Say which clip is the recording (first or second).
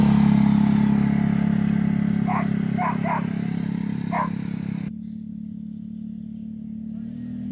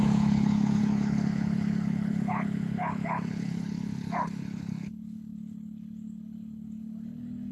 first